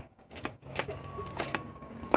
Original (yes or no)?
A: no